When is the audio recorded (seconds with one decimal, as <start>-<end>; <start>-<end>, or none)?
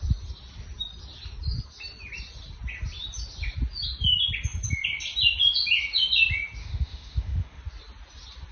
0.0-6.6; 7.6-8.5